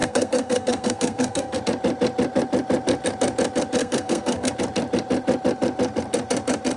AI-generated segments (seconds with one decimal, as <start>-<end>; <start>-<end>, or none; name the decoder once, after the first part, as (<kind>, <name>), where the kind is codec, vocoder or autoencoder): 0.0-1.6 (codec, SNAC); 3.8-4.5